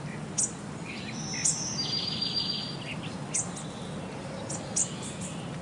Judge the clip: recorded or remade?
recorded